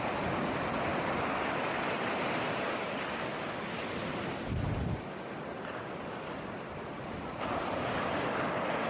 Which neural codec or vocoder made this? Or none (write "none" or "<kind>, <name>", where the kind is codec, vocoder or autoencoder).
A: none